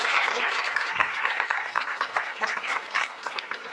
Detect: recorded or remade remade